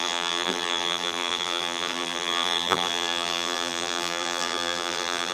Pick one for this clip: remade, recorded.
remade